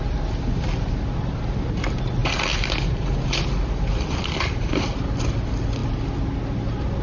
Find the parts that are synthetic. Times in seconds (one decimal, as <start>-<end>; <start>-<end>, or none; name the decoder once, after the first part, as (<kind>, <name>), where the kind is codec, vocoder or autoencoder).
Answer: 2.2-5.3 (vocoder, BigVGAN v2)